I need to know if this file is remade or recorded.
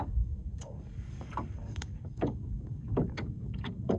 remade